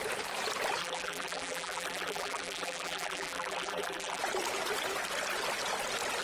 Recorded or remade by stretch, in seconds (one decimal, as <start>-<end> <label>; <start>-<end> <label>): 0.0-0.8 recorded; 0.8-4.2 remade; 4.2-6.2 recorded